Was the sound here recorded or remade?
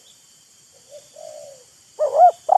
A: recorded